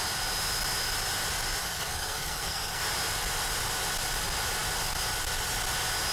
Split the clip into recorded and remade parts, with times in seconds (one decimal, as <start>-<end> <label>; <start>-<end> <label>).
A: 0.0-1.6 recorded; 1.6-2.8 remade; 2.8-6.1 recorded